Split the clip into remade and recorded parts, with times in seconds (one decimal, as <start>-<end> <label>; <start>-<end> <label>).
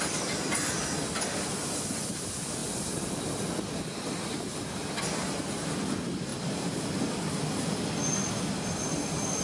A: 0.0-9.4 recorded